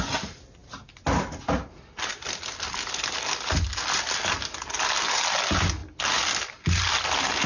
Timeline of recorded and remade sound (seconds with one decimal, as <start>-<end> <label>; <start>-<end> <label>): 0.0-7.5 recorded

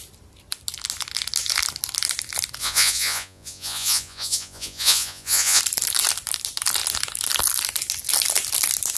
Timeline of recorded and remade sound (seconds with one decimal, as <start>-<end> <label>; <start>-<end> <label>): 0.0-2.6 recorded; 2.6-5.6 remade; 5.6-9.0 recorded